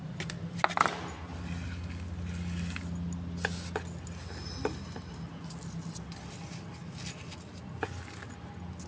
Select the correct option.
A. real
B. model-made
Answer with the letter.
A